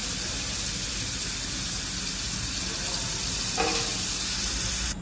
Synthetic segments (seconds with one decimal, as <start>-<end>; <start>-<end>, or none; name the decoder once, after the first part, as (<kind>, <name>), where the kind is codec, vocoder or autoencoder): none